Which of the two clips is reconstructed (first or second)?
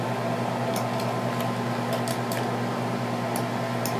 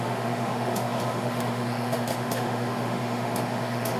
second